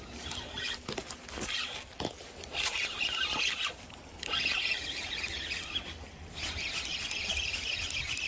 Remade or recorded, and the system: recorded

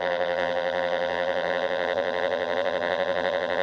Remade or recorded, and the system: remade, vocoder, BigVGAN v2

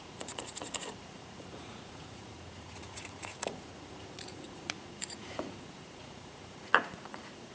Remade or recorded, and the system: remade, vocoder, Vocos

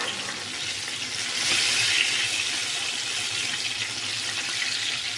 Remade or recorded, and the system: recorded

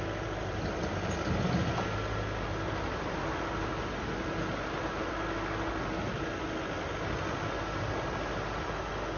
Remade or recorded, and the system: recorded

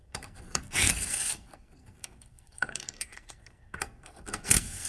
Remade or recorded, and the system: remade, codec, SNAC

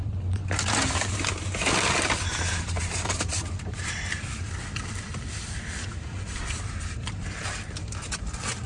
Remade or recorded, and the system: remade, vocoder, BigVGAN v2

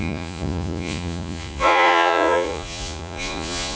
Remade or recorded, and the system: remade, vocoder, Vocos